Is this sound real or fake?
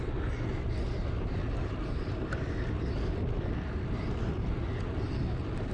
real